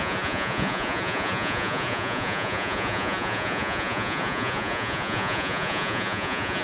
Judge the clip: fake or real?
fake